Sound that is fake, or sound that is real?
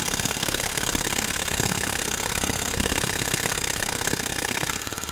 fake